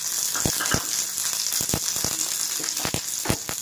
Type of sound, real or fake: real